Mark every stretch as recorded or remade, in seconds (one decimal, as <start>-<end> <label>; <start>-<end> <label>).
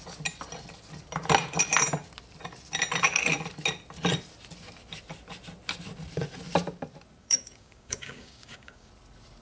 0.0-7.2 recorded; 7.2-8.9 remade; 8.9-9.4 recorded